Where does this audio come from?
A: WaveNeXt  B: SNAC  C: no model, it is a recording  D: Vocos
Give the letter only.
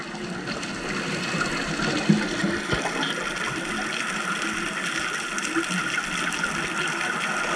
C